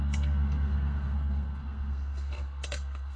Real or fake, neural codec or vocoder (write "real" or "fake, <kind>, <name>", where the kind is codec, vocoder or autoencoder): fake, codec, SNAC